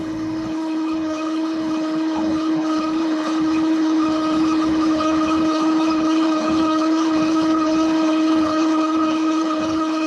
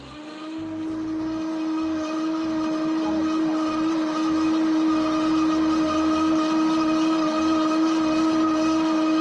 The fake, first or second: first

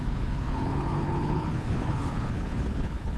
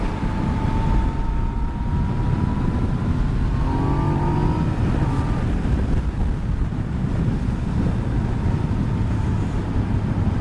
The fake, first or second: first